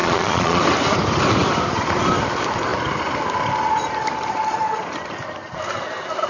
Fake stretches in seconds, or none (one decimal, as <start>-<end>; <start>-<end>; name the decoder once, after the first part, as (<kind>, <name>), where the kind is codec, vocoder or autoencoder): 0.0-0.6 (vocoder, Vocos)